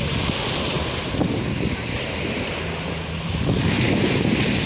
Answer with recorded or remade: recorded